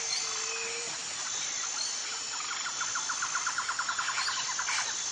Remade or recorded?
recorded